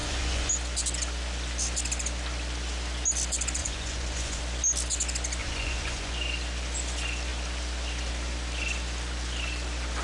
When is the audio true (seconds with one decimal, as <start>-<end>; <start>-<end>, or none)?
0.5-3.6; 4.4-5.4; 6.1-10.0